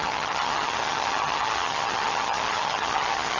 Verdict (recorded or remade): remade